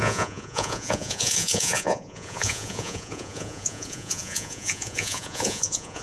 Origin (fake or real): fake